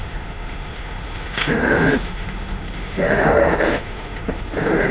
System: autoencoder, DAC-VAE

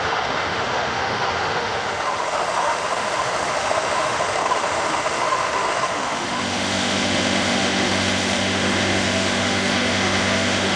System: autoencoder, DAC-VAE